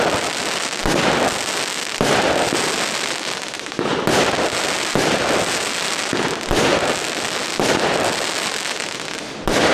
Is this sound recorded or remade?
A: recorded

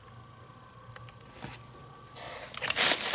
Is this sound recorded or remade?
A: recorded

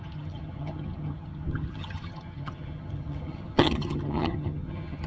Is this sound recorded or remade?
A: remade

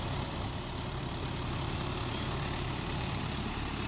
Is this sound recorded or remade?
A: remade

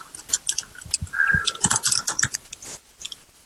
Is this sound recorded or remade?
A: remade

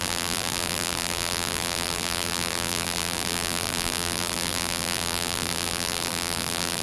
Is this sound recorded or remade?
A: remade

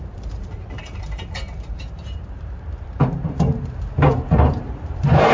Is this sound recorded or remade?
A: remade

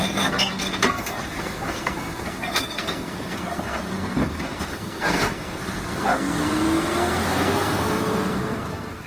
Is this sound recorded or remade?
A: remade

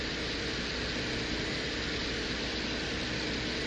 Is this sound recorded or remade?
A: recorded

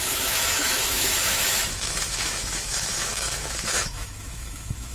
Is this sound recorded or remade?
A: remade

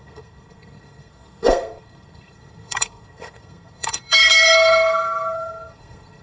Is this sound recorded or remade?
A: remade